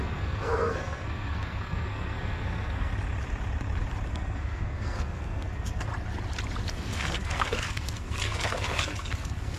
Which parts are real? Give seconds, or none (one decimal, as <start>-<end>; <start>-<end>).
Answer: 2.9-4.1; 5.9-6.7